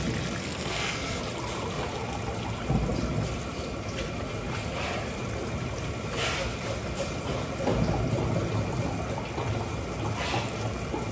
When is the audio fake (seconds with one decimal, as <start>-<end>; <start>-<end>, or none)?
0.4-1.2